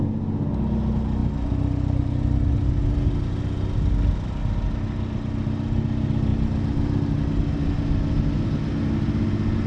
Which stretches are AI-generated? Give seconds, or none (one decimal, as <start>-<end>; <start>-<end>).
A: none